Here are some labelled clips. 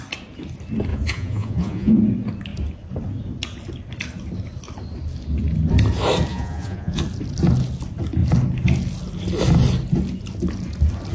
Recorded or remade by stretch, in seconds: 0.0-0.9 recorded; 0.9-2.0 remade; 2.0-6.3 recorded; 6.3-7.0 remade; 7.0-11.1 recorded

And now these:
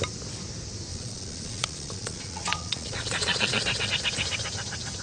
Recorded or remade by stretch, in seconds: 0.0-0.9 recorded; 0.9-3.9 remade; 3.9-5.0 recorded

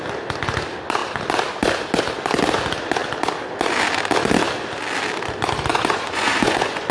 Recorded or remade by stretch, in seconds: 0.0-5.7 recorded; 5.7-6.9 remade